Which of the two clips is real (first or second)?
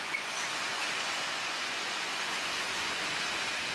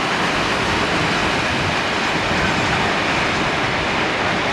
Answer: second